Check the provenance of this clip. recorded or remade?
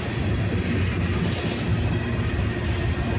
recorded